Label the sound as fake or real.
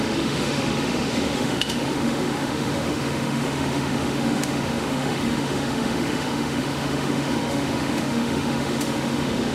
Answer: fake